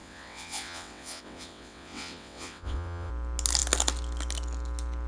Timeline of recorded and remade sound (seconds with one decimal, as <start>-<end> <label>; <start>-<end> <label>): 0.0-3.1 remade; 3.1-5.1 recorded